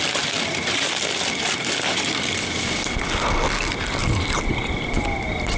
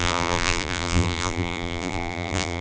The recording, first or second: first